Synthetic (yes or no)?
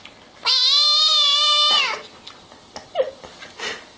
no